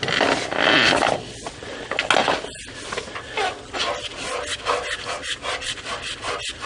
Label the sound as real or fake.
real